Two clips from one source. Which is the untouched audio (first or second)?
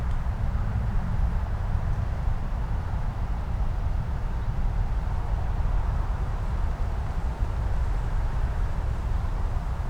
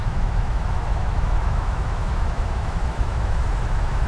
first